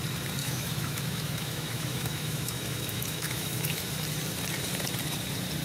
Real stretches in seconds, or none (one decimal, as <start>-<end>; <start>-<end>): 0.0-0.4; 3.8-5.6